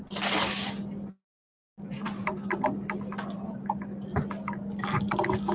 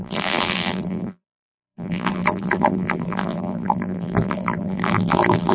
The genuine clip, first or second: first